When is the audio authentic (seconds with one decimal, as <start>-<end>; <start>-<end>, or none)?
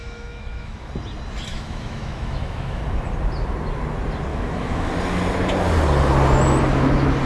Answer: 0.9-1.5; 2.8-4.3; 4.9-7.3